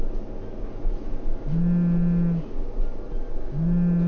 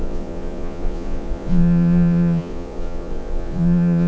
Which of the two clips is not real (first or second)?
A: second